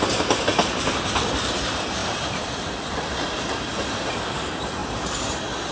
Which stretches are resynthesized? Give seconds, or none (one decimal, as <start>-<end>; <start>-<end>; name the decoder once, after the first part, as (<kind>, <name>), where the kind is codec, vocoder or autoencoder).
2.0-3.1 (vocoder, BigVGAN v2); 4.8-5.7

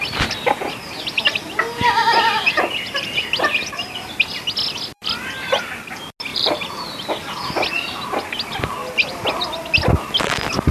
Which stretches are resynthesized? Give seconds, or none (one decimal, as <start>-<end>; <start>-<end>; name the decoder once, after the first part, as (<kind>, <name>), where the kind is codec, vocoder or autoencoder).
6.3-7.1 (vocoder, BigVGAN v2)

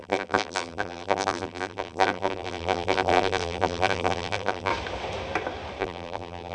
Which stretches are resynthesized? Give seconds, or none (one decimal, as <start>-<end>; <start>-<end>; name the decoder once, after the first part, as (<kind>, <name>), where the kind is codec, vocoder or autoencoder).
0.0-4.7 (vocoder, BigVGAN v2); 5.8-6.5

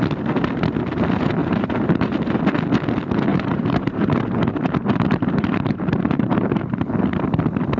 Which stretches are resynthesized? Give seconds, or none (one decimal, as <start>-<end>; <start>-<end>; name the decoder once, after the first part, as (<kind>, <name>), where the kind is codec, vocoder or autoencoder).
1.4-2.4 (vocoder, BigVGAN v2); 3.3-6.8